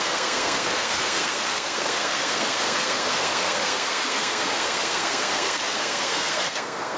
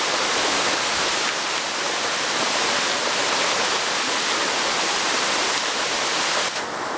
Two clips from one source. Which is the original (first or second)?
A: second